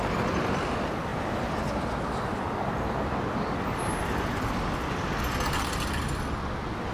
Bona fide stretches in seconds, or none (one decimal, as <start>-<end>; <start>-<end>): 0.0-6.9